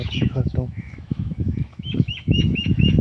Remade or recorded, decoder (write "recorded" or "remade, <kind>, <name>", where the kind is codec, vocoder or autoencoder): remade, autoencoder, DAC-VAE